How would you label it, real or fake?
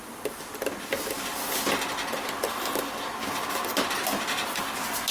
real